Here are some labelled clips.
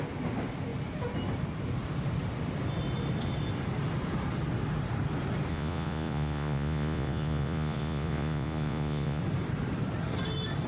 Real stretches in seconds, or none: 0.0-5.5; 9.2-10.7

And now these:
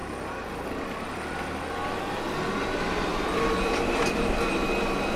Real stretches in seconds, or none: 0.0-3.1; 4.2-5.2